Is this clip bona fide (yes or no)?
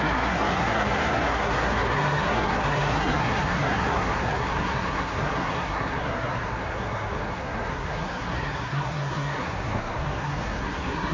no